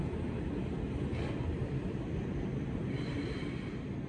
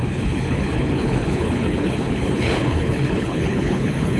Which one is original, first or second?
first